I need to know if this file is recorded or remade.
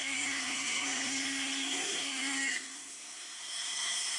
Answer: remade